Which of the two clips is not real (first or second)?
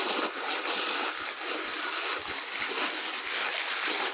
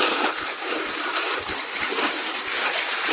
second